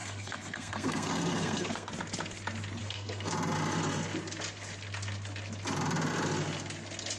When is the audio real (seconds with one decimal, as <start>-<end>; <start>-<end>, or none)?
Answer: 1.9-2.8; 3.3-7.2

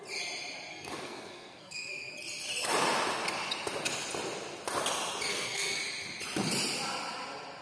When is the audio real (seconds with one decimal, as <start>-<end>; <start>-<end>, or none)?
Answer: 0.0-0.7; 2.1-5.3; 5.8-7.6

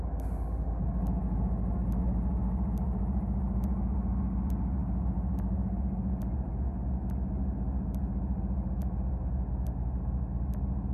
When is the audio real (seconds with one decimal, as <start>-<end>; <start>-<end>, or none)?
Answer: 0.0-10.9

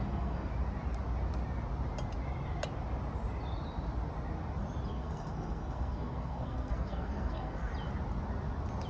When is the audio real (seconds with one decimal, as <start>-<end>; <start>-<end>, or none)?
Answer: 0.5-4.9; 7.7-8.9